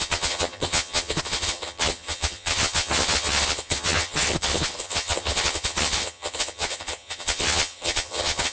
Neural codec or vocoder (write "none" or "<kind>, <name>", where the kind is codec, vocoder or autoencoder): vocoder, HiFi-GAN